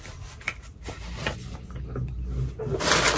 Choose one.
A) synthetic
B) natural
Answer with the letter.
B